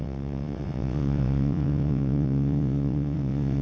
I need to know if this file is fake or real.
fake